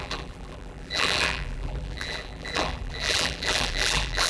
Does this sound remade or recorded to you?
remade